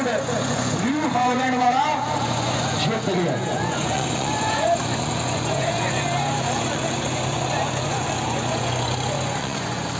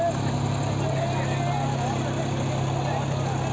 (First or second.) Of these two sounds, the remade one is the first